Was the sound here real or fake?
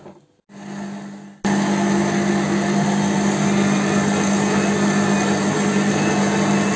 real